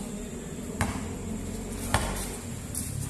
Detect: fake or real real